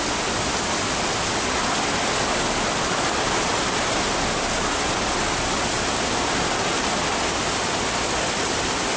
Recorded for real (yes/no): yes